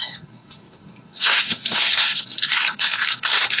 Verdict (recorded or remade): remade